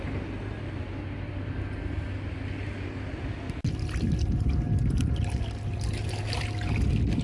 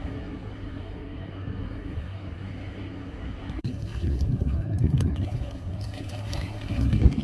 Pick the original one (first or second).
first